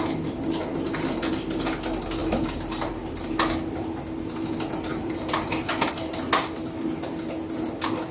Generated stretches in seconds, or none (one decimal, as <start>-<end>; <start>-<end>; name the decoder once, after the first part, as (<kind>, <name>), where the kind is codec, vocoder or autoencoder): 4.9-5.7 (vocoder, BigVGAN v2)